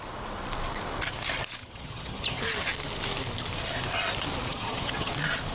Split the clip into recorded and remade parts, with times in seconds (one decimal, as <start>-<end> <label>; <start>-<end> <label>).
0.0-1.6 recorded; 1.6-2.4 remade; 2.4-4.5 recorded; 4.5-5.1 remade; 5.1-5.5 recorded